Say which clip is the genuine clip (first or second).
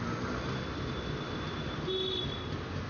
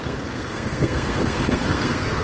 first